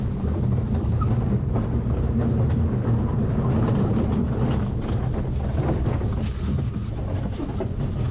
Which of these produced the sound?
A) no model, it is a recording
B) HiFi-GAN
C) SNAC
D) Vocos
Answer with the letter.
A